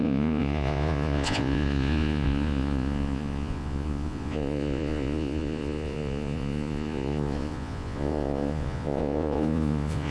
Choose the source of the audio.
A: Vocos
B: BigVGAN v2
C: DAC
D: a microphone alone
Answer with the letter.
A